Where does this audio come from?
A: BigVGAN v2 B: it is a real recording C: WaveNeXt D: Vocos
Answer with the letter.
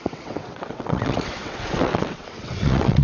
C